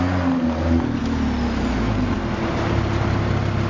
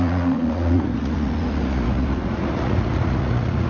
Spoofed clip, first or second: second